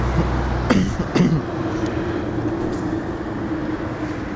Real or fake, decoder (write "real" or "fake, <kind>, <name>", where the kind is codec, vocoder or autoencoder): real